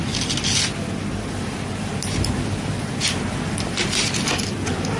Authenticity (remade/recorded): recorded